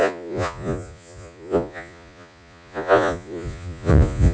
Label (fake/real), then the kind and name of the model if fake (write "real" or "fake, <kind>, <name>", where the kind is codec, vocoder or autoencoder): fake, vocoder, Vocos